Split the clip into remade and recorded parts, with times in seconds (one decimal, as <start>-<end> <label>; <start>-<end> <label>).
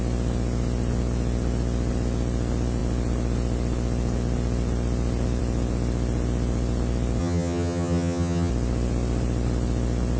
0.0-7.2 recorded; 7.2-8.5 remade; 8.5-10.2 recorded